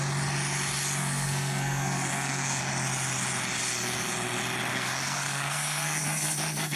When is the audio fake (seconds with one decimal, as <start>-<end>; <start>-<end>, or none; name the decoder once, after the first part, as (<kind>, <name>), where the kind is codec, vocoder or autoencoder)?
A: 1.0-2.6 (codec, SNAC); 4.7-6.8

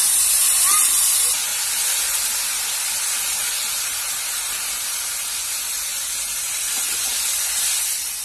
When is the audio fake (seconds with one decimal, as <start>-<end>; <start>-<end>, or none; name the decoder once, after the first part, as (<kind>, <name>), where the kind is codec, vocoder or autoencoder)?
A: none

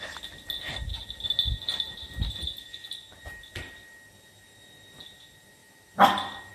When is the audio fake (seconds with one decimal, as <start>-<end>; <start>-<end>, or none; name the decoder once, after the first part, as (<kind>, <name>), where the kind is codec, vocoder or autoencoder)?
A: none

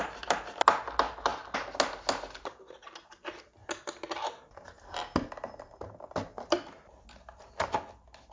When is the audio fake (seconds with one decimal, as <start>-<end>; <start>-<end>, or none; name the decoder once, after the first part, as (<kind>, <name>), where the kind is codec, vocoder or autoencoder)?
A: none

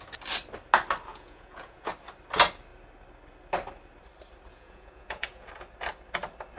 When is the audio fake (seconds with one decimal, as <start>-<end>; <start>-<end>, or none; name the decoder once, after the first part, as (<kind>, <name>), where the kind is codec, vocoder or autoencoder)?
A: 1.1-1.9 (vocoder, Vocos); 4.5-5.5

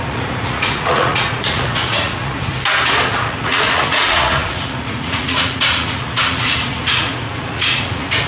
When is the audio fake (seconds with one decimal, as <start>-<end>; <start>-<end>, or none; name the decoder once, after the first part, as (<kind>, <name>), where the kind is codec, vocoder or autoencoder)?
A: 0.0-2.5 (vocoder, Vocos); 3.1-8.3